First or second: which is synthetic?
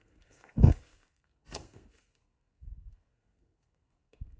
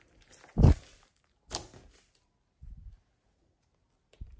first